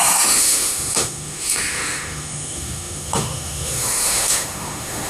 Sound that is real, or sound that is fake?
fake